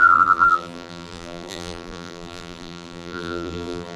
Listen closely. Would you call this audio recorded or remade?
remade